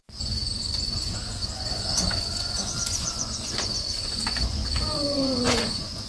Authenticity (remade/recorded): remade